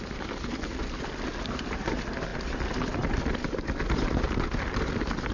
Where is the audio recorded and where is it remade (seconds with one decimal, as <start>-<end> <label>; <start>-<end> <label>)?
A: 0.0-2.3 recorded; 2.3-5.3 remade